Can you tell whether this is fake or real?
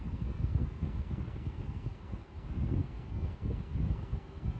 fake